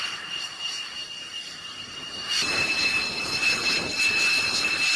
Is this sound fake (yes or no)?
yes